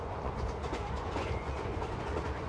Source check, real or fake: fake